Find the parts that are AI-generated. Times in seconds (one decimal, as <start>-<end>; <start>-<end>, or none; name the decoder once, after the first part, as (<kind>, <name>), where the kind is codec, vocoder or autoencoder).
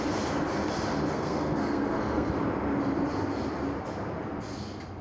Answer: 1.1-2.3 (codec, SNAC)